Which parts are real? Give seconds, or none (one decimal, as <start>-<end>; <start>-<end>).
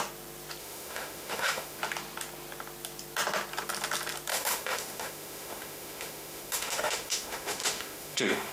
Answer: 0.0-0.6; 1.8-4.3